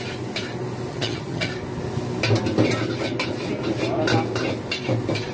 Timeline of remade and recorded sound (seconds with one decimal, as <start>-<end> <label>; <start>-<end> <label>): 0.0-0.9 recorded; 0.9-1.5 remade; 1.5-5.3 recorded